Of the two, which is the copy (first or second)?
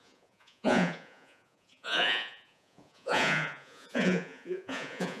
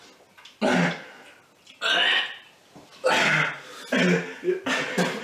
first